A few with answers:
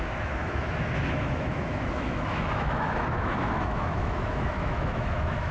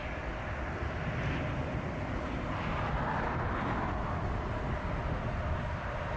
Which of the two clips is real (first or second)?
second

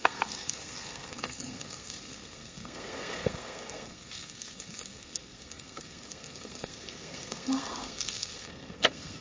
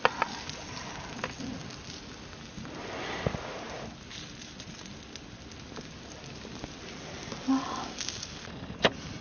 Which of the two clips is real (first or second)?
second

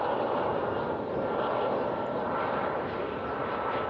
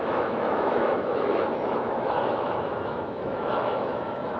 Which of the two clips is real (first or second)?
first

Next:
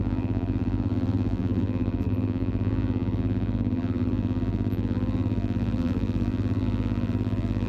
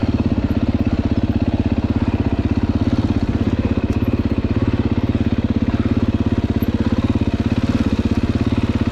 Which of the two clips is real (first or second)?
second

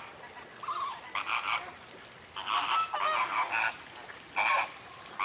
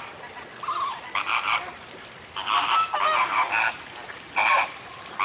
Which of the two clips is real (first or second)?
first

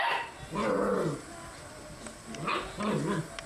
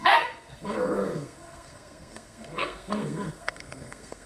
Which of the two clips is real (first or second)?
first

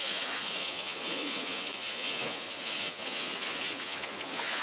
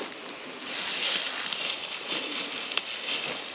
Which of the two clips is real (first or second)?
second